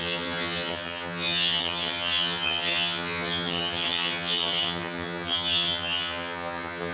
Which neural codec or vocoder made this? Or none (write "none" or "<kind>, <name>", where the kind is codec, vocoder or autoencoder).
vocoder, HiFi-GAN